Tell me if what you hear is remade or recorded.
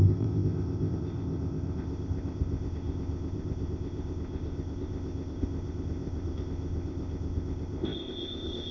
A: remade